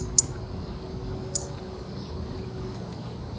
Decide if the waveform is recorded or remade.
remade